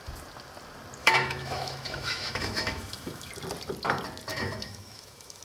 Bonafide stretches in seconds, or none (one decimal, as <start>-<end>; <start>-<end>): 0.0-1.0; 3.3-4.3